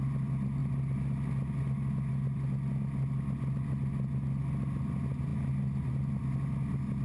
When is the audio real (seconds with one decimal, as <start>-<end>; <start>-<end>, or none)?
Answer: 0.0-7.0